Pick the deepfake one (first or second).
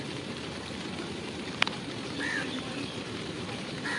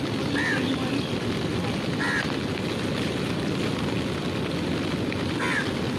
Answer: first